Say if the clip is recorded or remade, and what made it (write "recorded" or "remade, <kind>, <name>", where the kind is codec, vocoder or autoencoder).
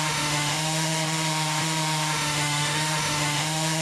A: remade, autoencoder, DAC-VAE